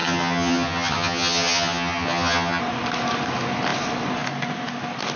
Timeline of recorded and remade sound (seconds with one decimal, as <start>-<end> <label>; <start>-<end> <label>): 0.0-2.6 remade; 2.6-5.2 recorded